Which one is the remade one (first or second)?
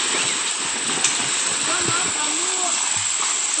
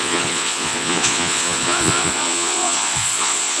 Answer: second